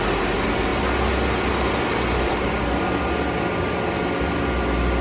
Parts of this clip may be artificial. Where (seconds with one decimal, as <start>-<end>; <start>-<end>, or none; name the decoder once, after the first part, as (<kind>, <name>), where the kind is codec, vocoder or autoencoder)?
none